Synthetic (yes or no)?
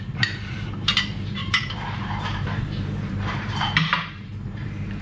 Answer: yes